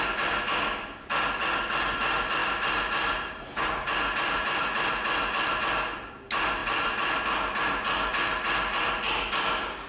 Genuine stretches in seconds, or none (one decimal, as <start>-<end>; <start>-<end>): 0.0-9.9